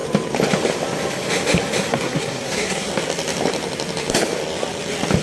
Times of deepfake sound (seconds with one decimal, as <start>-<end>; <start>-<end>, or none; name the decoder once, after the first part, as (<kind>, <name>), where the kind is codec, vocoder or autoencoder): 1.9-2.9 (codec, SNAC)